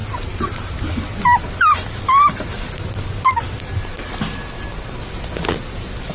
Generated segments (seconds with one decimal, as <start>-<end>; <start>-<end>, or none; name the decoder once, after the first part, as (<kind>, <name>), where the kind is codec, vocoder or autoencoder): 0.0-0.9 (vocoder, BigVGAN v2)